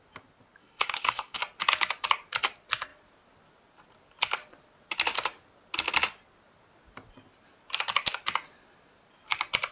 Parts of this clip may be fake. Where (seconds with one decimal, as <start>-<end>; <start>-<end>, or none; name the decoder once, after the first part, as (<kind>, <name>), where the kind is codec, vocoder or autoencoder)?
0.6-1.4 (codec, SNAC)